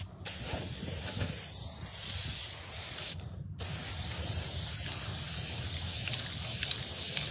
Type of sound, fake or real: real